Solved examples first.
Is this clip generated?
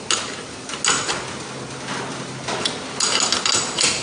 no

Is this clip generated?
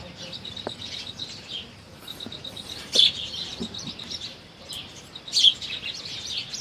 yes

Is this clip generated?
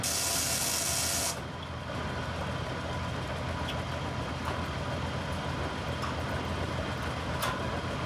no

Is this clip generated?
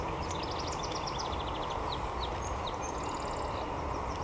no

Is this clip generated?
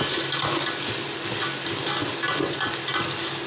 no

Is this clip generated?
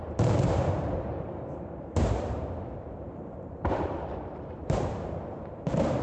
yes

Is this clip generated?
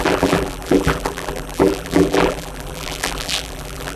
yes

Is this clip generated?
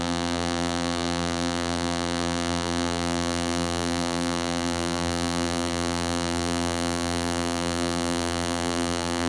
yes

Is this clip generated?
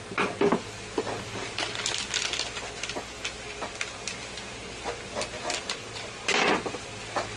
no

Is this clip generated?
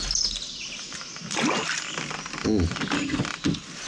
no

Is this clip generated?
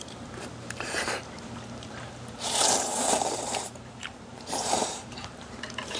yes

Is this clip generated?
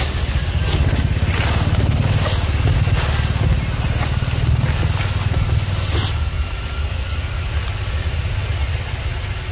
no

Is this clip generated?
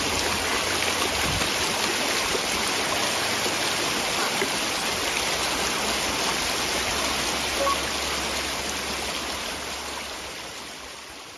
no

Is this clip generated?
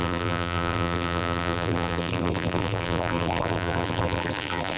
yes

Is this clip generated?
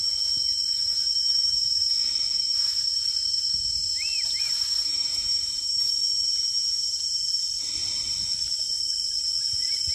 no